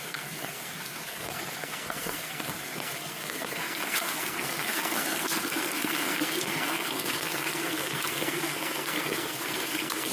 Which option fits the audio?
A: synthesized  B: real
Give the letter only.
A